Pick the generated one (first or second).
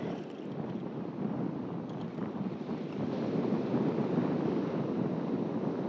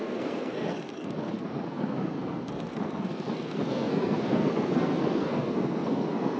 second